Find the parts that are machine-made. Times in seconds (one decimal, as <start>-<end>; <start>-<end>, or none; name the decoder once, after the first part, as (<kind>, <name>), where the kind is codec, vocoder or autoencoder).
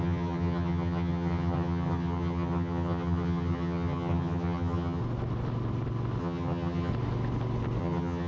0.0-5.0 (vocoder, HiFi-GAN); 6.2-6.9; 7.8-8.3